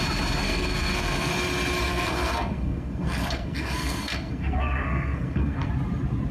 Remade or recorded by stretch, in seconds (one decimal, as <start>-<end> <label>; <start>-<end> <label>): 0.0-0.4 recorded; 0.4-1.3 remade; 1.3-1.9 recorded; 1.9-5.7 remade; 5.7-6.3 recorded